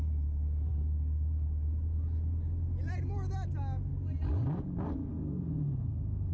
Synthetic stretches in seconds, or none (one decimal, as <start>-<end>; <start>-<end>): 5.1-6.3